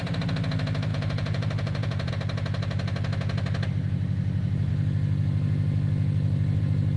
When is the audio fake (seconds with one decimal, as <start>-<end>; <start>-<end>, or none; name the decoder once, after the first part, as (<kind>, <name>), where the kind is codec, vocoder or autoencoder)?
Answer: 0.9-2.1 (vocoder, Vocos)